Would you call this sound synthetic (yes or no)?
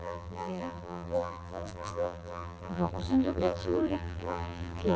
yes